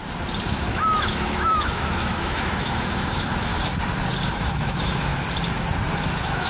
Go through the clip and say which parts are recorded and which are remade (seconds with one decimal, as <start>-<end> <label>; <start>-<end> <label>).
0.0-0.5 recorded; 0.5-3.5 remade; 3.5-4.3 recorded; 4.3-5.1 remade; 5.1-6.1 recorded; 6.1-6.5 remade